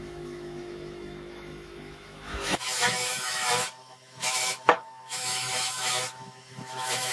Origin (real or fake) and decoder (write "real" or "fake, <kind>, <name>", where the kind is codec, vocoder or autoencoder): fake, autoencoder, DAC-VAE